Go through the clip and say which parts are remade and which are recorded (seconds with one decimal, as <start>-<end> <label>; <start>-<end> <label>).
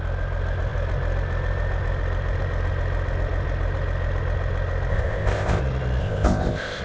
0.0-4.9 recorded; 4.9-5.6 remade; 5.6-6.0 recorded; 6.0-6.8 remade